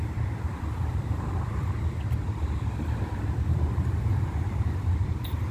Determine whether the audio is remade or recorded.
remade